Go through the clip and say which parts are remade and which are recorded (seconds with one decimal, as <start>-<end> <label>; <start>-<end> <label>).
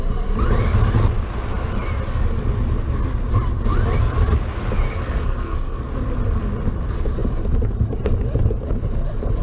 0.0-4.9 recorded; 4.9-5.9 remade; 5.9-9.4 recorded